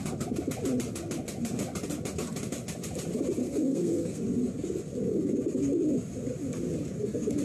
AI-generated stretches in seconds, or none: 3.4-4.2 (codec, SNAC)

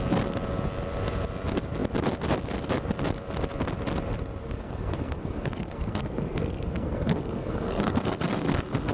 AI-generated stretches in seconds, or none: 4.4-8.9 (codec, SNAC)

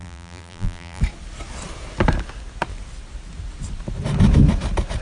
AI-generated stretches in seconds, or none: 0.0-1.0 (vocoder, BigVGAN v2)